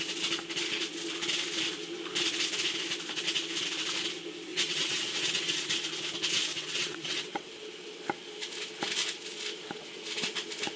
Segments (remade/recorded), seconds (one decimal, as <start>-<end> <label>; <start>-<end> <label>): 0.0-4.5 recorded; 4.5-5.8 remade; 5.8-6.5 recorded; 6.5-7.5 remade; 7.5-10.8 recorded